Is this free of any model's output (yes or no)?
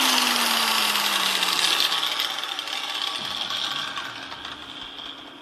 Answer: yes